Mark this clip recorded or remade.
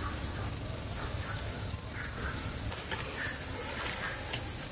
recorded